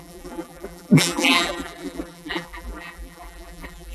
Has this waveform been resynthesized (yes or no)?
yes